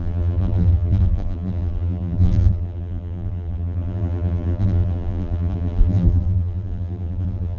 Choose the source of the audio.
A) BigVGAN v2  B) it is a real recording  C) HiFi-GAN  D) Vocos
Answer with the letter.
A